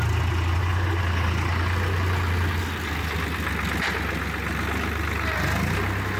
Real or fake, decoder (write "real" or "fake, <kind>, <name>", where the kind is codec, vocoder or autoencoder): real